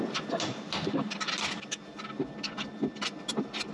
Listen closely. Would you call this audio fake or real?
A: real